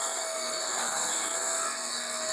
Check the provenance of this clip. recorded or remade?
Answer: remade